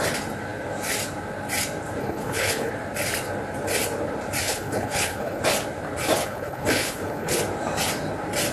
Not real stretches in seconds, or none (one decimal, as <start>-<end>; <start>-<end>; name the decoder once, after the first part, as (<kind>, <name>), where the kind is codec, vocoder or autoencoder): 2.0-2.7 (codec, HILCodec); 4.4-5.4; 6.2-7.4